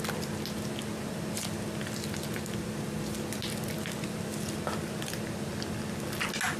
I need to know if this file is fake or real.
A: real